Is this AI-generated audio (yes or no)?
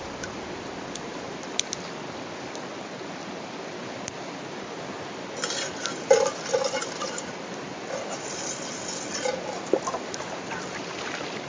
no